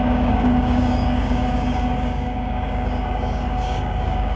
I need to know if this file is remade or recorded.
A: remade